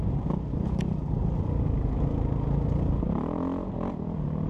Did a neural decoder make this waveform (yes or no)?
no